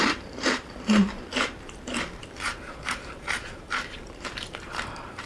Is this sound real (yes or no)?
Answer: no